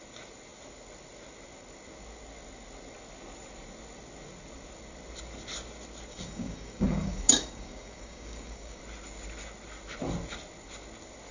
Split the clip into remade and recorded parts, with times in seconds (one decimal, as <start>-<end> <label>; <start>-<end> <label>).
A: 0.0-6.1 recorded; 6.1-8.8 remade; 8.8-11.3 recorded